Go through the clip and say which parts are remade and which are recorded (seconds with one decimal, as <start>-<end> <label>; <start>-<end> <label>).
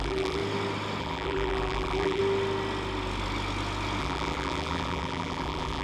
0.0-0.4 remade; 0.4-1.0 recorded; 1.0-2.2 remade; 2.2-4.0 recorded; 4.0-5.8 remade